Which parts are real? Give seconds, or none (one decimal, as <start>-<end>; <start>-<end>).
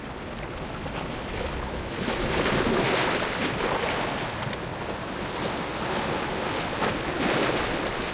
0.0-8.1